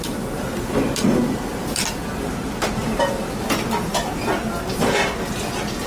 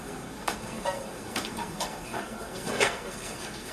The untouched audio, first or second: first